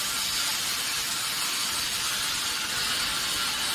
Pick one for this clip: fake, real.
fake